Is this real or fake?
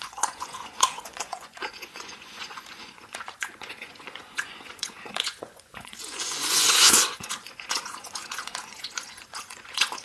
fake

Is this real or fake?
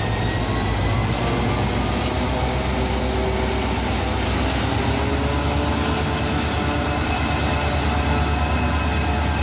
real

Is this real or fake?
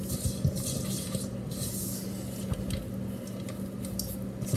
real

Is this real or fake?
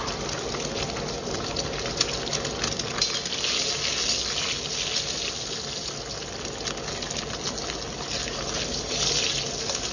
real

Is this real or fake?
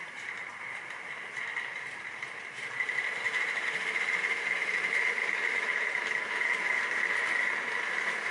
fake